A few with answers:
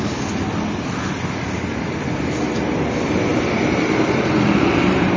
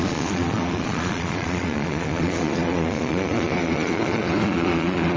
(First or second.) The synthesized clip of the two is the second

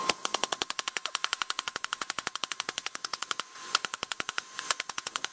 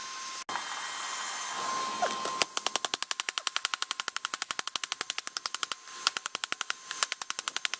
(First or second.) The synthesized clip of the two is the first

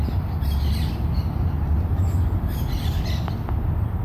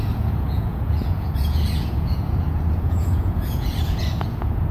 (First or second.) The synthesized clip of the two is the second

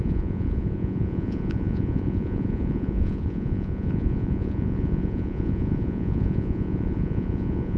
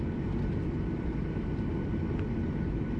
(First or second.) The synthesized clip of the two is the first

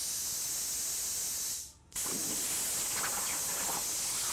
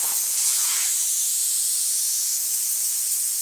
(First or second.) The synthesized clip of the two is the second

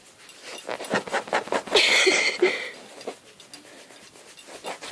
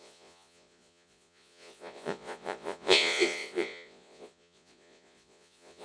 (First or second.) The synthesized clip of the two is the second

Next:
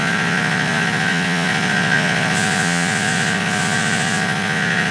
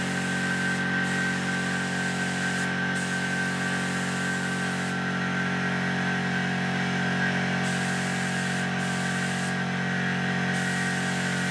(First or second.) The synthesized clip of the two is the first